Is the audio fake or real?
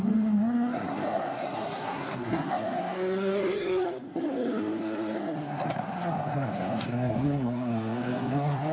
fake